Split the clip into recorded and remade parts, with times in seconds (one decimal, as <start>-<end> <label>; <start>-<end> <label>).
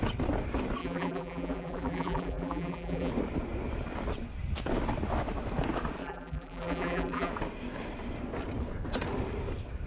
0.0-0.8 recorded; 0.8-3.1 remade; 3.1-6.0 recorded; 6.0-7.3 remade; 7.3-9.9 recorded